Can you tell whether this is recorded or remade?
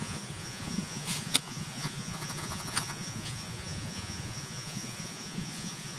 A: remade